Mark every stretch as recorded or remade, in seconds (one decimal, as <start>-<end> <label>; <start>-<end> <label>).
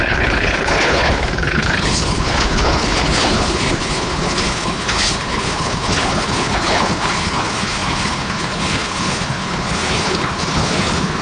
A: 0.0-11.2 remade